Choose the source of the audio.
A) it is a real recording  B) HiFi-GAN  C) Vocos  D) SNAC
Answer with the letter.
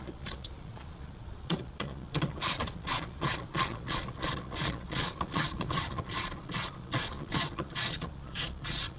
C